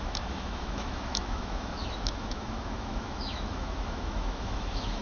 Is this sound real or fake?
fake